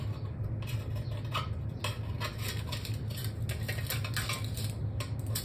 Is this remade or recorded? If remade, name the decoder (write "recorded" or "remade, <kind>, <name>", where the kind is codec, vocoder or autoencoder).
recorded